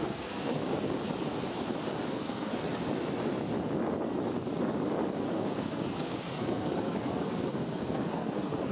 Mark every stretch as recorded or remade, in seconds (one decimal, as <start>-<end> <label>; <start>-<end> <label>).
0.0-0.6 remade; 0.6-2.1 recorded; 2.1-2.5 remade; 2.5-5.2 recorded; 5.2-8.7 remade